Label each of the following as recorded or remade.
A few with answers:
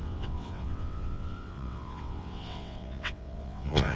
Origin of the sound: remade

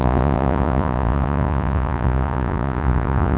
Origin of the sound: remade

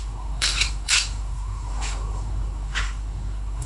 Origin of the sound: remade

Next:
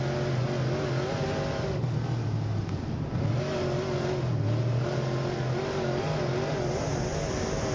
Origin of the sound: recorded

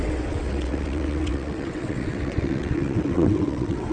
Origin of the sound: remade